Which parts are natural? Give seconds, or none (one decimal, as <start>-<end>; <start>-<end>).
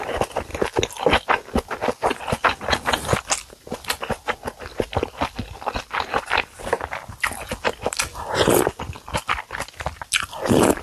0.0-10.8